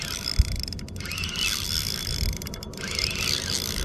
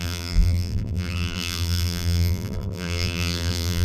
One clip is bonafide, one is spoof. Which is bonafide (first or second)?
first